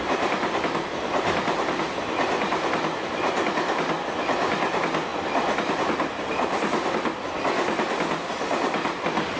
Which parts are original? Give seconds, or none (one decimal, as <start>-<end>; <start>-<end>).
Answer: 0.0-9.4